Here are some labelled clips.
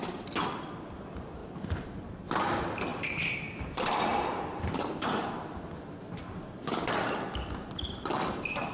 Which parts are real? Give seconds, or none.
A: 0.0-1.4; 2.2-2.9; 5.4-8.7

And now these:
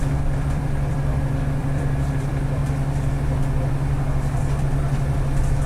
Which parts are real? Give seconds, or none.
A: 2.6-4.6

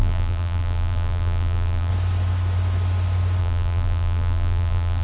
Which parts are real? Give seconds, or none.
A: 1.9-3.4

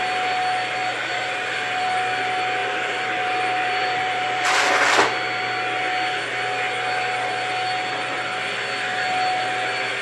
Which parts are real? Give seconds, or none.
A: 0.0-0.8; 1.8-2.6; 4.7-10.0

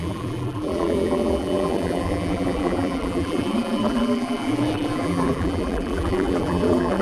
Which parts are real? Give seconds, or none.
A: none

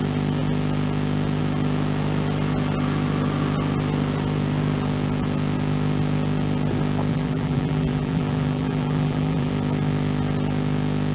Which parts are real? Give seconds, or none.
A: 0.0-7.1; 9.5-11.1